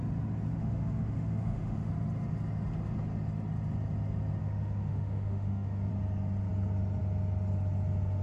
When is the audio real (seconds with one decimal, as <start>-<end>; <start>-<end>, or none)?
0.0-0.5; 1.9-4.4; 5.9-8.2